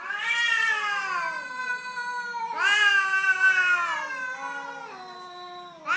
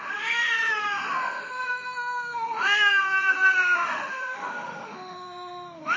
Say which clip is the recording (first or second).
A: first